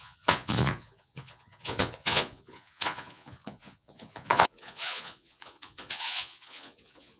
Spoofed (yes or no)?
yes